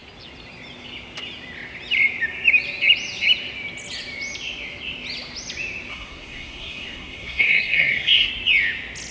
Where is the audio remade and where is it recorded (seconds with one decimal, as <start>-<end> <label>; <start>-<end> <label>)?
0.0-5.9 recorded; 5.9-8.3 remade; 8.3-9.1 recorded

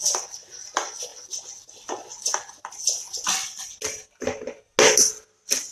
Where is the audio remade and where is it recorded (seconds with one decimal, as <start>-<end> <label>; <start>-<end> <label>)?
0.0-5.7 recorded

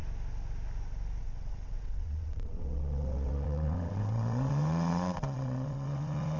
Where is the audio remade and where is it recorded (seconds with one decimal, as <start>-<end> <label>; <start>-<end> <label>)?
0.0-1.2 recorded; 1.2-6.4 remade

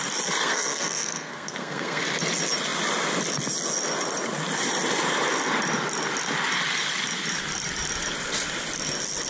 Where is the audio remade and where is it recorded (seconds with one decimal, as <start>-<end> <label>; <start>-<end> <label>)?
0.0-0.4 recorded; 0.4-2.0 remade; 2.0-9.3 recorded

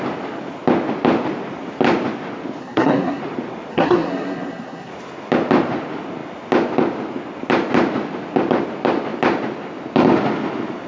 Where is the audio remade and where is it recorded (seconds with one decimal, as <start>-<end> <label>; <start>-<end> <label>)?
0.0-2.6 recorded; 2.6-3.2 remade; 3.2-3.7 recorded; 3.7-4.9 remade; 4.9-10.9 recorded

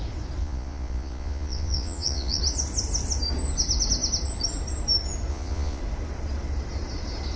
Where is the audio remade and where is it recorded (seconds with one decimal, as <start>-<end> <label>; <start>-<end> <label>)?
0.0-0.4 recorded; 0.4-2.4 remade; 2.4-5.3 recorded; 5.3-5.8 remade; 5.8-7.4 recorded

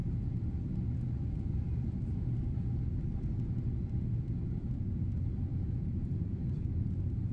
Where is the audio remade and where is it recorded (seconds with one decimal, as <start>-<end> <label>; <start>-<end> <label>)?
0.0-4.4 recorded; 4.4-5.5 remade; 5.5-6.2 recorded; 6.2-7.3 remade